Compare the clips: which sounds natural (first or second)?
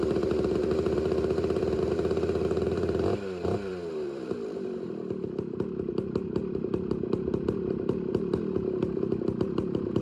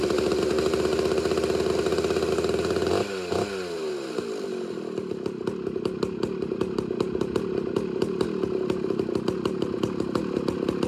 second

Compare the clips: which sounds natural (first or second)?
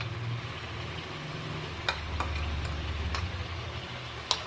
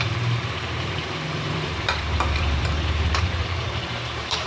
first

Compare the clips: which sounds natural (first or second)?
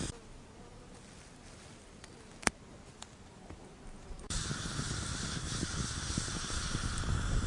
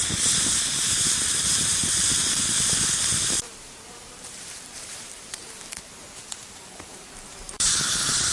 first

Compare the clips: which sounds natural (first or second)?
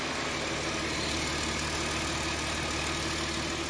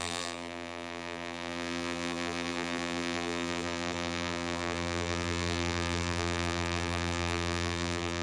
first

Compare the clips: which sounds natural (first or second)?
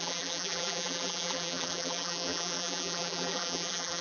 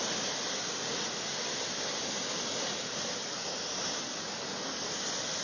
second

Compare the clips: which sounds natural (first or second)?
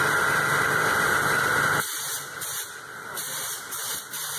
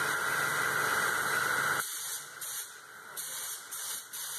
second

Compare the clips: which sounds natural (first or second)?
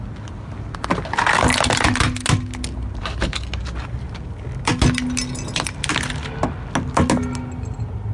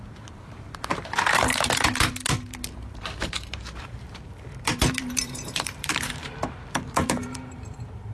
first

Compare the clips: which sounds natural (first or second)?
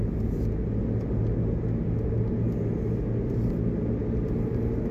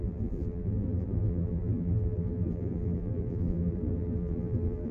first